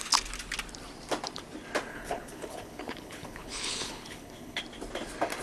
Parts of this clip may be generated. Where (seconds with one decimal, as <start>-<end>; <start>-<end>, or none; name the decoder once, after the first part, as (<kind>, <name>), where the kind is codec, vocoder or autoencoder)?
1.9-4.6 (codec, HILCodec)